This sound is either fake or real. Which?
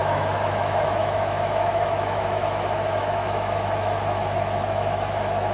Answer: fake